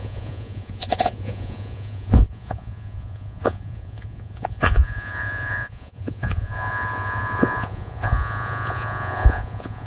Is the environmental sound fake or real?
fake